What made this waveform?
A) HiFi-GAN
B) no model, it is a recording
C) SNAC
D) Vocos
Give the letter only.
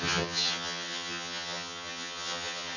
A